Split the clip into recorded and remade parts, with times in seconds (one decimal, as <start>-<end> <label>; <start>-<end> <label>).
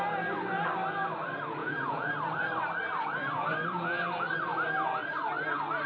0.0-1.6 recorded; 1.6-2.1 remade; 2.1-5.9 recorded